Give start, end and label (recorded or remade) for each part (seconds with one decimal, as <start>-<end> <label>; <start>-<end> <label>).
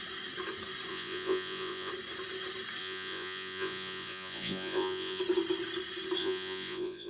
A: 0.0-0.9 recorded; 0.9-1.9 remade; 1.9-2.8 recorded; 2.8-5.2 remade; 5.2-6.2 recorded; 6.2-7.1 remade